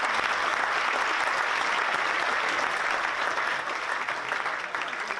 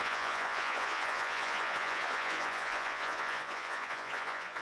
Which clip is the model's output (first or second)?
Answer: second